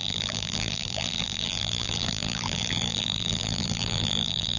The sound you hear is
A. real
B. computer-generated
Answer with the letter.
B